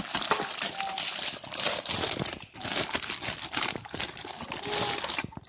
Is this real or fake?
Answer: real